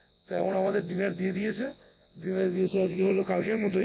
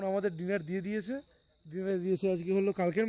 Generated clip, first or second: first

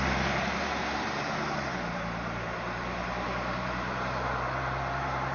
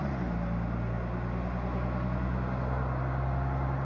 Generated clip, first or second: first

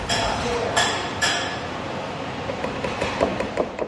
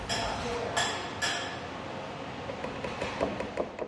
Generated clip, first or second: first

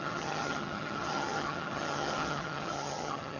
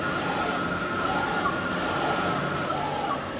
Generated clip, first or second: first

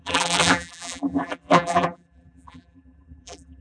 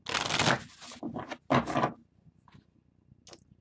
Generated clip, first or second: first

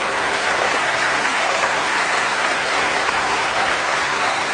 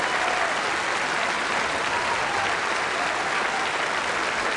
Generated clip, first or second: first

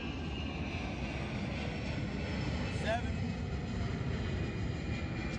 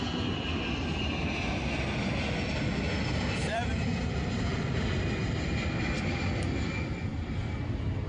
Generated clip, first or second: second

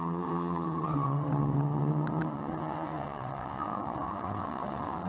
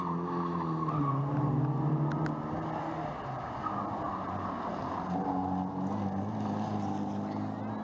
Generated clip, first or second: first